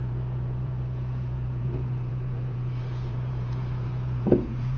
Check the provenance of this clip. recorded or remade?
remade